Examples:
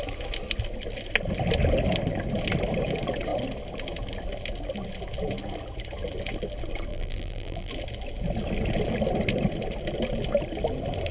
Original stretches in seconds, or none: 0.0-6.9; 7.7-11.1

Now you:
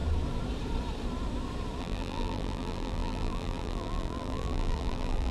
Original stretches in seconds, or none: 0.0-1.8

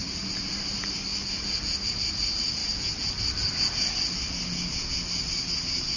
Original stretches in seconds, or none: 1.1-1.9; 2.6-6.0

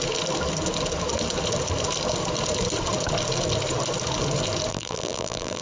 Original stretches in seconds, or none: 0.0-4.7

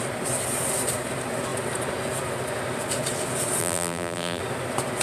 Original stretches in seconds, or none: 0.0-3.6; 4.4-5.0